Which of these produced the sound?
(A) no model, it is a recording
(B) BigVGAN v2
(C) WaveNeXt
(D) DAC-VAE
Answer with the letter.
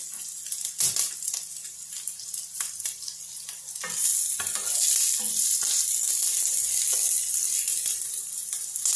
A